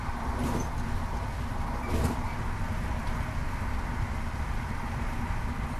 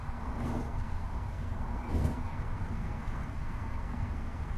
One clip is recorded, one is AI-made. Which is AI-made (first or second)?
second